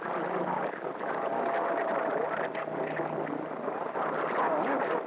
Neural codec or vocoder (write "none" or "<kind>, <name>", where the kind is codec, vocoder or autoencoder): none